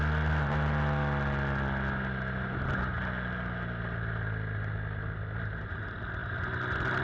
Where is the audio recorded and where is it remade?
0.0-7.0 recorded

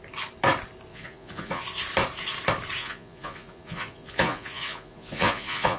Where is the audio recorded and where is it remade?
0.0-0.9 recorded; 0.9-1.6 remade; 1.6-2.8 recorded; 2.8-5.8 remade

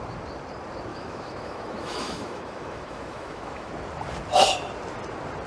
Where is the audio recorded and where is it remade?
0.0-0.9 recorded; 0.9-3.7 remade; 3.7-5.5 recorded

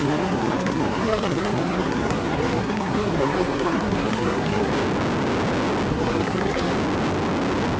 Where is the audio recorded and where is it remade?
0.0-4.7 remade; 4.7-5.9 recorded; 5.9-6.7 remade; 6.7-7.8 recorded

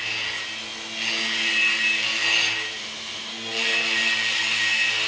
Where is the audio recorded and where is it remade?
0.0-2.8 recorded; 2.8-3.3 remade; 3.3-5.1 recorded

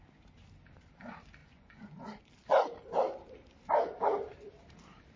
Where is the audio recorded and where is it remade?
0.0-1.4 recorded; 1.4-2.3 remade; 2.3-5.2 recorded

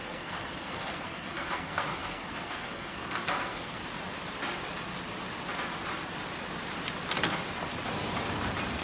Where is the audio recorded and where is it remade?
0.0-3.8 remade; 3.8-8.8 recorded